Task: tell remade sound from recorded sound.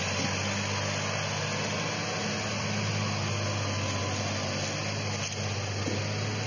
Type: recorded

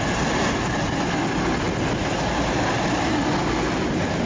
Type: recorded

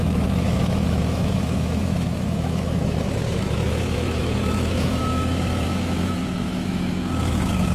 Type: remade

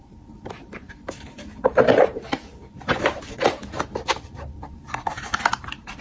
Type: remade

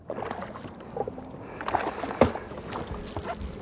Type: recorded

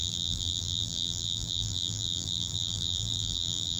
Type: remade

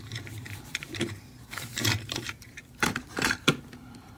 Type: remade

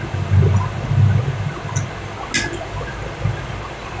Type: recorded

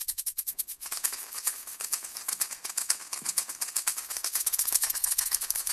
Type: remade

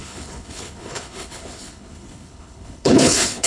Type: remade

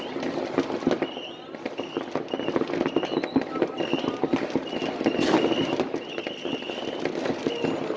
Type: recorded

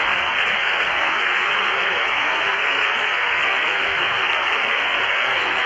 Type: remade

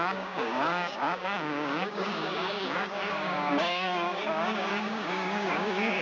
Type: remade